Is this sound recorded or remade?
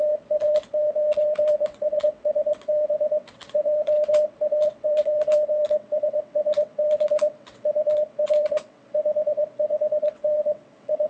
remade